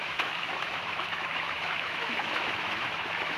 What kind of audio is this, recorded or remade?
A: remade